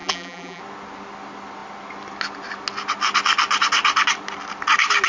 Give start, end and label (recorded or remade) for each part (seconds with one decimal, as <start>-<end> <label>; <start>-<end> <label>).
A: 0.0-0.6 remade; 0.6-5.1 recorded